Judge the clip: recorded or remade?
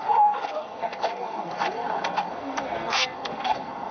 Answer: remade